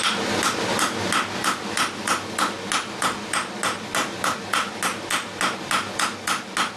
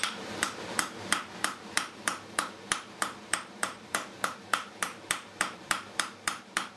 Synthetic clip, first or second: second